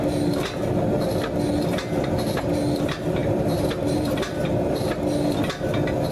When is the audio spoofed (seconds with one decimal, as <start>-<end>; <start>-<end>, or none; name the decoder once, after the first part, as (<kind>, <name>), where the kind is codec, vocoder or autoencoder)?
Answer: 3.2-4.9 (vocoder, BigVGAN v2)